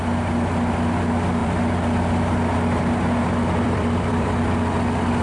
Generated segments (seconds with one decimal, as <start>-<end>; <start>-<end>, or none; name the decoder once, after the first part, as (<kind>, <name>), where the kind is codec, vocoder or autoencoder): 1.4-4.5 (vocoder, BigVGAN v2)